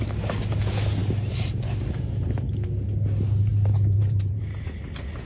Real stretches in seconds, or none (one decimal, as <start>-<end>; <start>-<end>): 0.0-1.0; 2.4-3.5; 4.4-5.3